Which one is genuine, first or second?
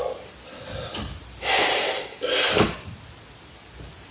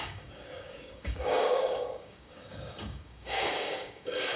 first